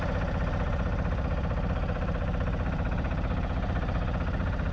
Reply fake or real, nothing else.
fake